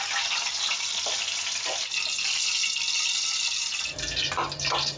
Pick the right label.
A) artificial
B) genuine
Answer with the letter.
B